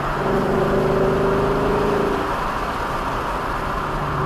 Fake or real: real